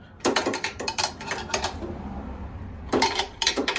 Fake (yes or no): yes